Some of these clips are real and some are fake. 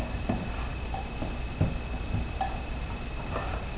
real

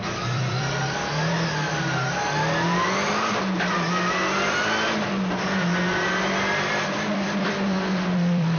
fake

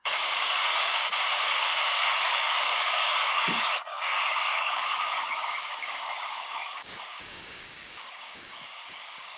fake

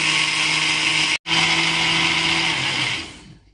real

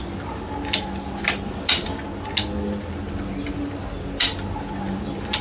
real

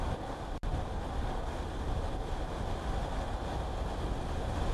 real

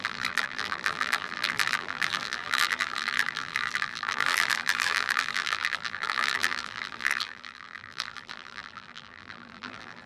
fake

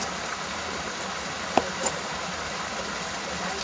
real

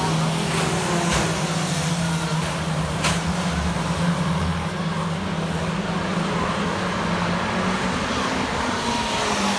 real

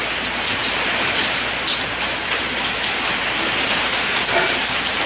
real